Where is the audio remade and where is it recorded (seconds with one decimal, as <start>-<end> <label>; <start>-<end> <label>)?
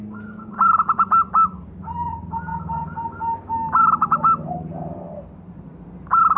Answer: 0.0-6.4 recorded